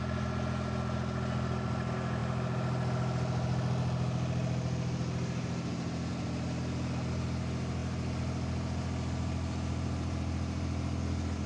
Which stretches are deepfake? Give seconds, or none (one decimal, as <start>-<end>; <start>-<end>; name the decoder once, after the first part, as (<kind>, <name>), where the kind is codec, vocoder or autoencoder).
none